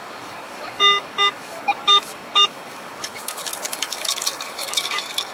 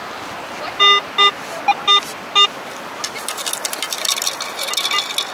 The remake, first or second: first